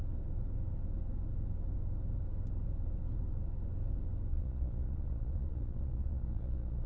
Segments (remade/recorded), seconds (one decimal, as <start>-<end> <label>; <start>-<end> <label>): 0.0-4.3 recorded; 4.3-6.9 remade